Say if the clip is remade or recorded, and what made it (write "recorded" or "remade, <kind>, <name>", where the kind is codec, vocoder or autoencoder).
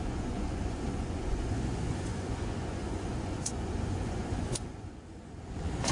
remade, vocoder, Vocos